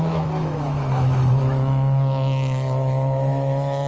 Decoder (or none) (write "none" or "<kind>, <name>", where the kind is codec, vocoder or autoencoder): autoencoder, DAC-VAE